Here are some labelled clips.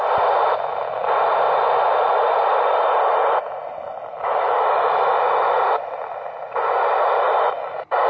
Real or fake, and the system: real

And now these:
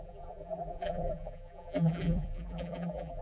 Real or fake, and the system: fake, vocoder, BigVGAN v2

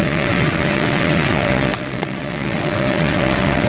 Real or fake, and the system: fake, vocoder, WaveNeXt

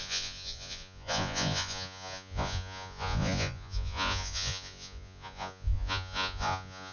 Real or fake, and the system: fake, vocoder, Vocos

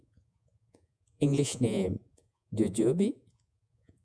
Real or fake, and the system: fake, vocoder, Vocos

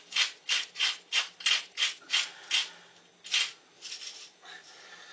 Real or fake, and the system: real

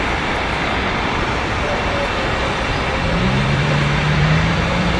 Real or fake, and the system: fake, vocoder, BigVGAN v2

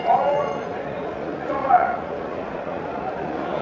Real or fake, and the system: fake, vocoder, Vocos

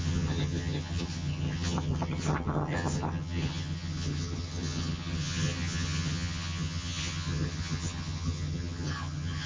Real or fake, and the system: fake, vocoder, HiFi-GAN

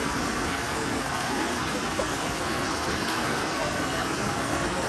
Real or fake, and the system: fake, codec, SNAC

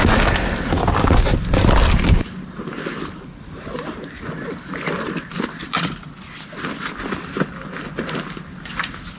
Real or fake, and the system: real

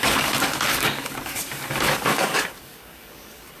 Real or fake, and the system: fake, codec, DAC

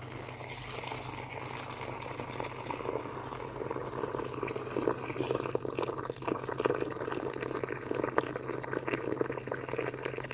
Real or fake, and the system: real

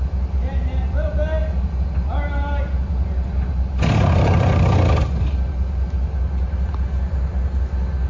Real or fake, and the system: real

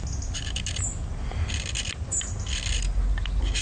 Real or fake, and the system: real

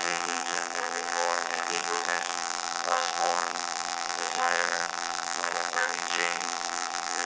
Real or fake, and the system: fake, vocoder, BigVGAN v2